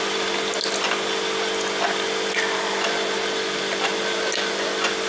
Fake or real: real